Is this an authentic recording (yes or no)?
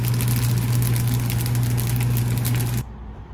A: yes